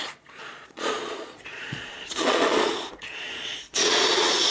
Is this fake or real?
fake